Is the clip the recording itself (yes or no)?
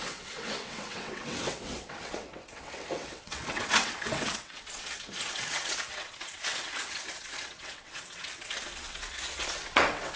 no